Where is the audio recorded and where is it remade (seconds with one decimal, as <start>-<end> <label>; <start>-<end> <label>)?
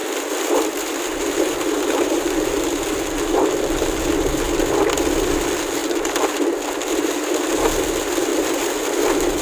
0.0-4.1 remade; 4.1-5.8 recorded; 5.8-6.6 remade; 6.6-8.3 recorded; 8.3-9.4 remade